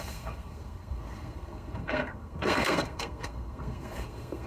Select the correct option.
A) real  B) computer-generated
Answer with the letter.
B